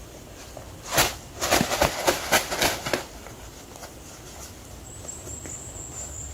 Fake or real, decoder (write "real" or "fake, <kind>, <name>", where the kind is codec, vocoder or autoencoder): real